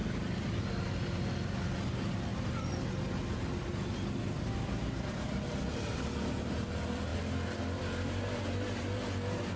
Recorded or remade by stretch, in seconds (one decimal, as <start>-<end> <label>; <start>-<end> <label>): 0.0-9.6 recorded